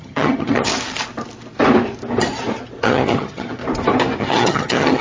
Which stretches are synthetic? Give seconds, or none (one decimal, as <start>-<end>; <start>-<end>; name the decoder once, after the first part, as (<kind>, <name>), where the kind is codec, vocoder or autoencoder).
0.0-0.7 (vocoder, HiFi-GAN); 2.8-3.6; 4.2-5.0